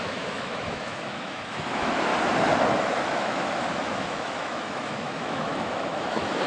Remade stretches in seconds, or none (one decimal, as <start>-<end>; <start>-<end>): 0.0-2.1; 2.8-6.5